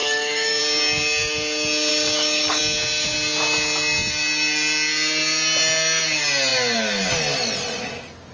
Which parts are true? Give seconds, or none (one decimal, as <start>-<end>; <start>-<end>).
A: 0.6-1.9; 2.6-8.3